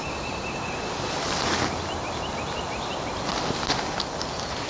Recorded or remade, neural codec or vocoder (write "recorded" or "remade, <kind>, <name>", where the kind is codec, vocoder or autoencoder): recorded